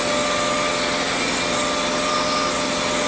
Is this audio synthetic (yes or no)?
no